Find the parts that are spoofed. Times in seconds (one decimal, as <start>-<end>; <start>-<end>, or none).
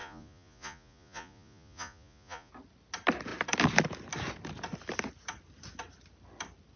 0.0-2.5